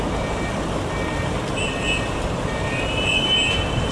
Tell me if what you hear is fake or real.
real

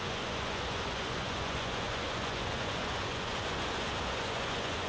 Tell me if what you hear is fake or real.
fake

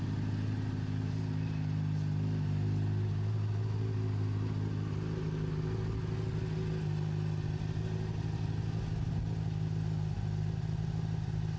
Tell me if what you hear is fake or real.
real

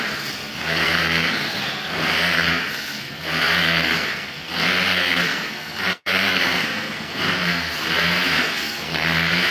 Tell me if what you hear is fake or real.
fake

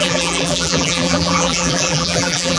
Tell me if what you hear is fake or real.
fake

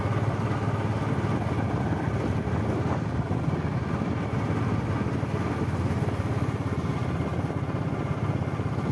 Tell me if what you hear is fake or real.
real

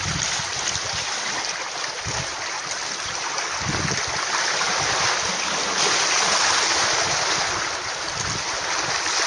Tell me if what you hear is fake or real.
real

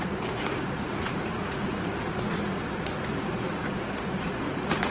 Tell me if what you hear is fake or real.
fake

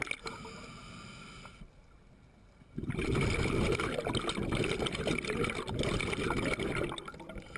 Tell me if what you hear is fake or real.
real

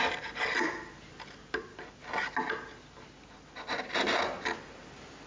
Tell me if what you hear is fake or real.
real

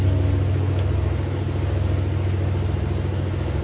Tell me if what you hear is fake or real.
real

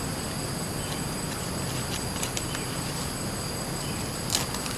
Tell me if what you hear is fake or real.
real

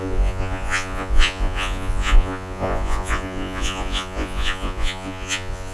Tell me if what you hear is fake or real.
fake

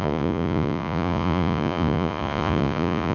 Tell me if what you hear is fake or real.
fake